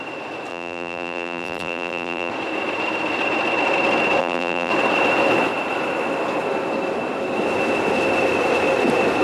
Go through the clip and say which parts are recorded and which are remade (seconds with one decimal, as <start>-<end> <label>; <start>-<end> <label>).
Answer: 0.0-0.5 recorded; 0.5-2.3 remade; 2.3-4.2 recorded; 4.2-4.7 remade; 4.7-9.2 recorded

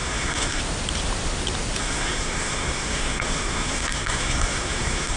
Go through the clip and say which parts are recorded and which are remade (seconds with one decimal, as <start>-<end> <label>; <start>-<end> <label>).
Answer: 0.0-0.6 remade; 0.6-1.8 recorded; 1.8-5.2 remade

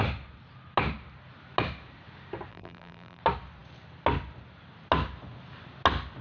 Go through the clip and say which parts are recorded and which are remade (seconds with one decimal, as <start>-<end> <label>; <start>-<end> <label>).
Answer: 0.0-2.5 recorded; 2.5-3.2 remade; 3.2-6.2 recorded

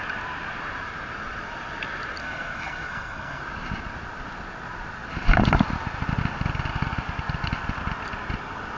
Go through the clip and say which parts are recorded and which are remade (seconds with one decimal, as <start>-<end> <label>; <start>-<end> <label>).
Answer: 0.0-2.2 recorded; 2.2-3.4 remade; 3.4-8.8 recorded

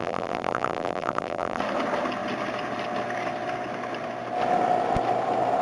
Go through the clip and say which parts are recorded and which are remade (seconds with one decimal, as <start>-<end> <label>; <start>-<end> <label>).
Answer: 0.0-1.6 remade; 1.6-5.6 recorded

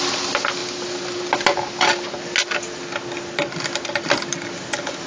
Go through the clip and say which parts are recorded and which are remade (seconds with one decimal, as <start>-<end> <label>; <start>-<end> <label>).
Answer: 0.0-5.1 recorded

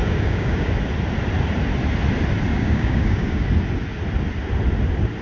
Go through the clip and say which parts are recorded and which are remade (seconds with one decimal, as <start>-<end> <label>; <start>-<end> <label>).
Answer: 0.0-0.7 remade; 0.7-2.5 recorded; 2.5-3.5 remade; 3.5-5.2 recorded